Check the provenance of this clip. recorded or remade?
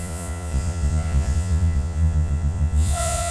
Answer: remade